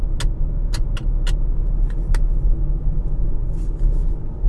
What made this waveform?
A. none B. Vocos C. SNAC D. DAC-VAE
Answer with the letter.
A